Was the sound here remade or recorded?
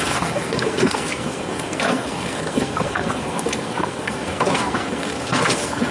remade